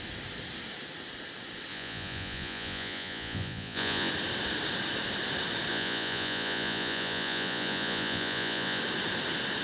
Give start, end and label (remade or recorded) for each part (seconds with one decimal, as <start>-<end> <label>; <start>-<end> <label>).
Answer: 0.0-1.7 recorded; 1.7-4.1 remade; 4.1-5.7 recorded; 5.7-8.8 remade; 8.8-9.6 recorded